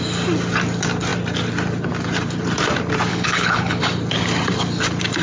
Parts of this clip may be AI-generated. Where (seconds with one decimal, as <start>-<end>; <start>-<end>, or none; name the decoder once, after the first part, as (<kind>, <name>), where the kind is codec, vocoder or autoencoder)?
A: 3.1-3.8 (codec, HILCodec)